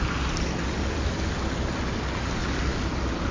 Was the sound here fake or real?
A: real